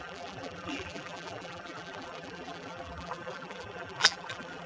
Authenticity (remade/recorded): remade